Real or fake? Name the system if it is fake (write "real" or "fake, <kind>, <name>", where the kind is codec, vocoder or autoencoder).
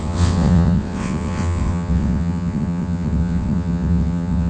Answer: fake, vocoder, WaveNeXt